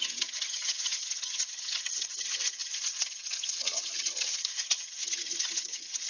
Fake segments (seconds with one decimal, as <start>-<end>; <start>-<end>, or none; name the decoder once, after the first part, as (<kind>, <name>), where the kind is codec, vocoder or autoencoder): 0.0-6.1 (vocoder, HiFi-GAN)